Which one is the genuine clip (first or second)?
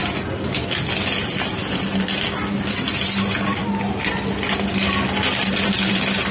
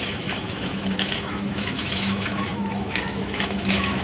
first